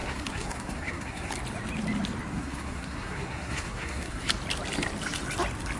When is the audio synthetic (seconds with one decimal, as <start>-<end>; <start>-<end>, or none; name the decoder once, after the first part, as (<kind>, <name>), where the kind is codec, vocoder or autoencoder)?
0.0-1.3 (codec, SNAC); 2.3-4.3